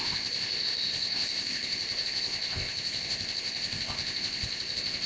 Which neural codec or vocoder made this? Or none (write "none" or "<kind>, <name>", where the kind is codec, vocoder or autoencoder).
codec, ZipCodec